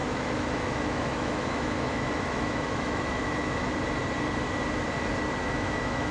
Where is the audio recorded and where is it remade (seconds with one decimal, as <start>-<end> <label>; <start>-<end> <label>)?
0.0-3.7 remade; 3.7-5.4 recorded; 5.4-6.1 remade